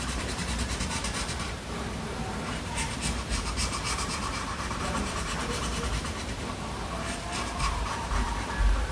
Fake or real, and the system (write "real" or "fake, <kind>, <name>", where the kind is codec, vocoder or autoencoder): fake, vocoder, BigVGAN v2